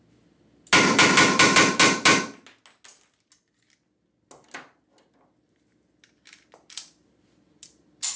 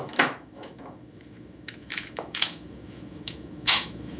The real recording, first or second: first